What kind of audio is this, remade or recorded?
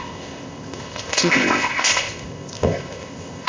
remade